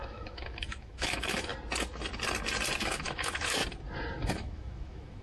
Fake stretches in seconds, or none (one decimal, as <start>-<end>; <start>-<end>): 0.0-1.5; 2.8-3.6; 4.3-5.2